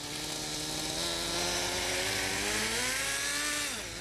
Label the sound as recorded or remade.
recorded